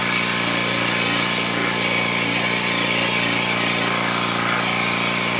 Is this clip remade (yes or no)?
no